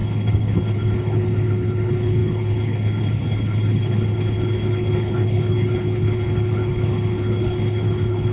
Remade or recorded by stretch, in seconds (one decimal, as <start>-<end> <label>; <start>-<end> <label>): 0.0-8.3 remade